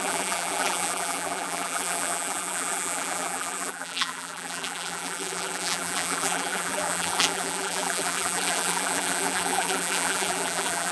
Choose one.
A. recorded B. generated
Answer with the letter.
B